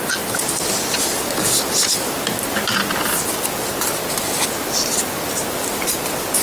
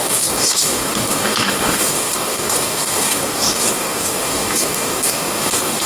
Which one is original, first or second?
first